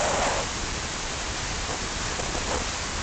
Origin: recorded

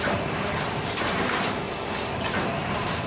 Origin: remade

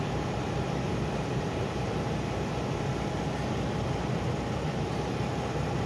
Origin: remade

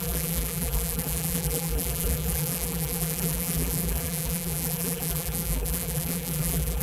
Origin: remade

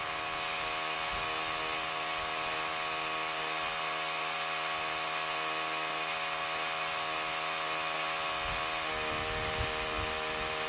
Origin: recorded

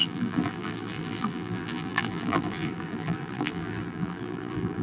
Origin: remade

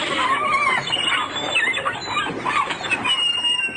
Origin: remade